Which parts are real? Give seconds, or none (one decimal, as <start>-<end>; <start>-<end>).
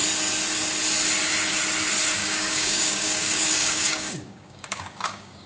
0.0-2.2